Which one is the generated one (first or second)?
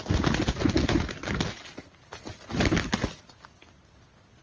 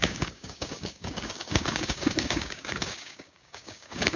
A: second